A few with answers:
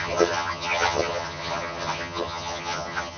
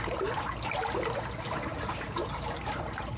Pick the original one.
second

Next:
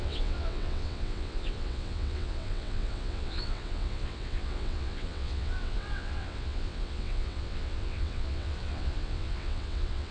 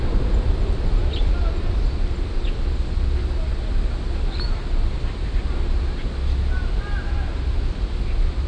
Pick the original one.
second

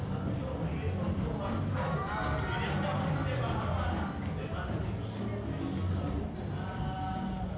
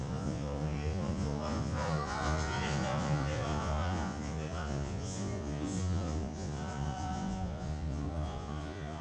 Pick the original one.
first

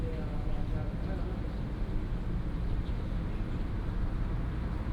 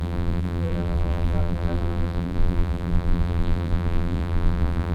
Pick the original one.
first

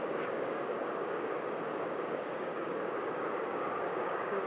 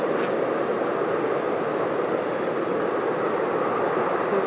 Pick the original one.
second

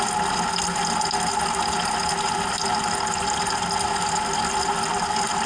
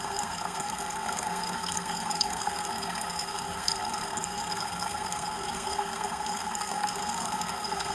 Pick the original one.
first